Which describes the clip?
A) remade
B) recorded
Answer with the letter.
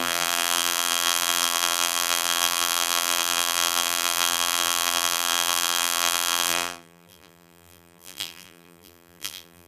A